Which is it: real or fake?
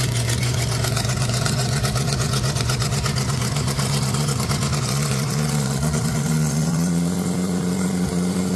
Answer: fake